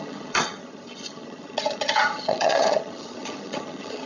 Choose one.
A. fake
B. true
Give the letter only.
A